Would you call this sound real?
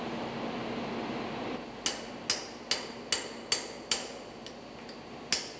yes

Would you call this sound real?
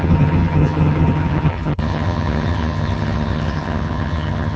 no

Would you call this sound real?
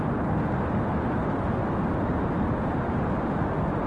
no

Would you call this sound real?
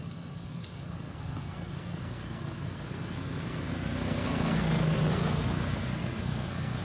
no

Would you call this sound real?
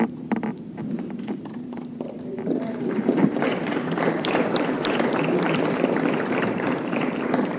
no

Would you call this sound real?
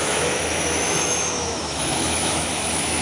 no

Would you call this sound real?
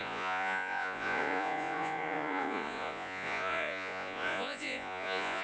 no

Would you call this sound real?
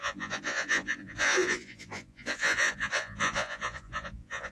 no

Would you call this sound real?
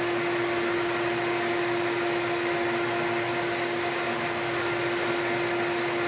yes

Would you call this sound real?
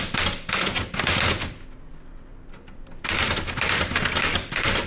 yes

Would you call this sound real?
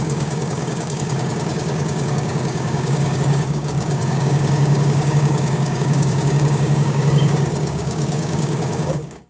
no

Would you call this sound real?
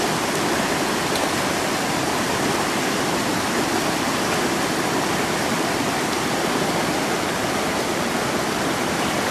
yes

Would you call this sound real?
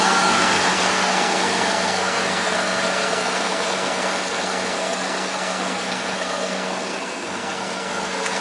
no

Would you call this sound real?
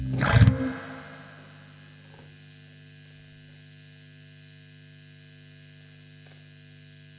yes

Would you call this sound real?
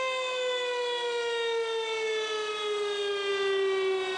yes